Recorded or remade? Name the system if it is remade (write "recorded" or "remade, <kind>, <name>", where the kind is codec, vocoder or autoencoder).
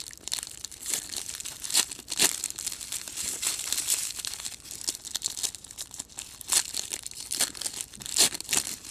recorded